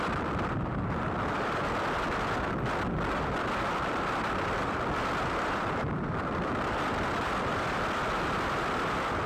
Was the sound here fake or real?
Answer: fake